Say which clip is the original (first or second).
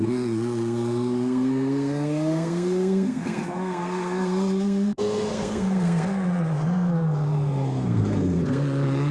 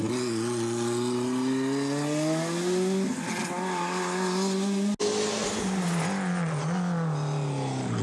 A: second